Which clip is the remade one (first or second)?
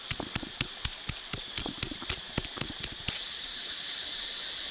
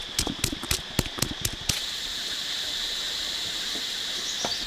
first